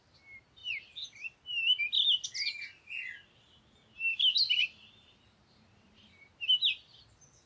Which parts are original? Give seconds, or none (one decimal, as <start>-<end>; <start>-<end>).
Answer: 0.0-4.6; 6.5-7.5